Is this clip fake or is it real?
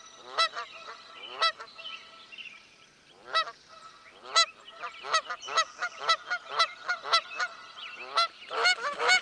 real